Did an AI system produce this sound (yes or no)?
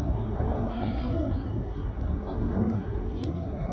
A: yes